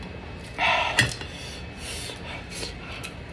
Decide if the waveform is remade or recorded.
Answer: recorded